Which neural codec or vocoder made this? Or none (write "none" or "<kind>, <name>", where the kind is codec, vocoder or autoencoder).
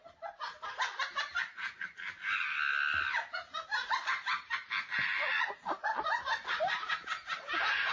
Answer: none